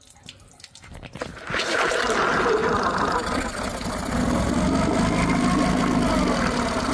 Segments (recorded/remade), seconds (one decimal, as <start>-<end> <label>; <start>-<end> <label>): 0.0-6.9 recorded